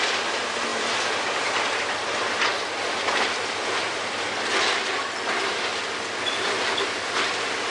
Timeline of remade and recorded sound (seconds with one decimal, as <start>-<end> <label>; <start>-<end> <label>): 0.0-7.7 recorded